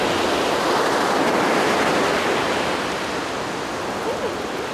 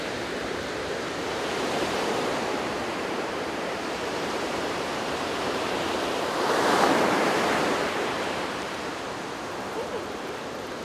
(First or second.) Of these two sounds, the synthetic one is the second